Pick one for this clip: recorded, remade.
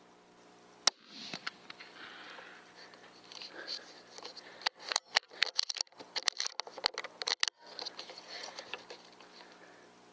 recorded